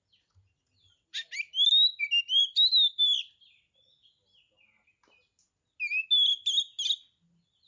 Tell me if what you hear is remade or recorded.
recorded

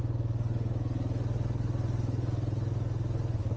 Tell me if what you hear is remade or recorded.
recorded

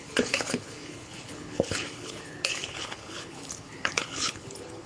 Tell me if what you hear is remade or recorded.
remade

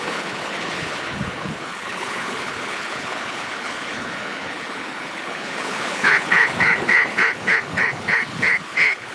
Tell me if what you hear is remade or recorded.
remade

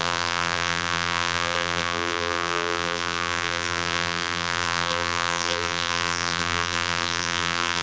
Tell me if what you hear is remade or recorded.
remade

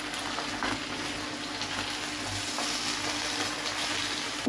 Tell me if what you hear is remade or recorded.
recorded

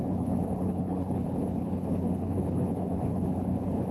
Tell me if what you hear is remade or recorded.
remade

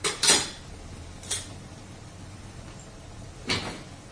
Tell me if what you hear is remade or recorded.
recorded